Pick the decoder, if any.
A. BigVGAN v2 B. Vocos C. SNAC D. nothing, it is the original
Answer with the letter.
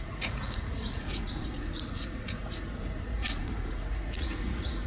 B